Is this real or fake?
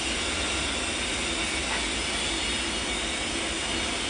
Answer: real